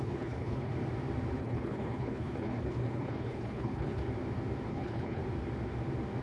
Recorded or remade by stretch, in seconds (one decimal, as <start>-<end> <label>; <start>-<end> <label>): 0.0-0.7 remade; 0.7-1.4 recorded; 1.4-4.0 remade; 4.0-4.7 recorded; 4.7-5.2 remade; 5.2-6.2 recorded